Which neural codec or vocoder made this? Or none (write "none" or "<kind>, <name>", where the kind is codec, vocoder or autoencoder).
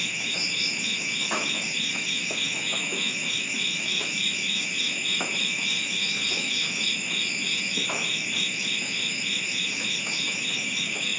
autoencoder, DAC-VAE